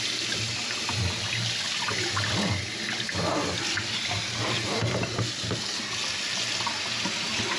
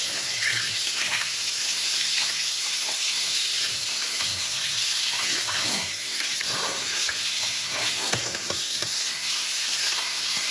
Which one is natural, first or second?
first